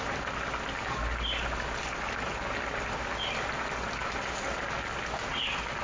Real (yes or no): yes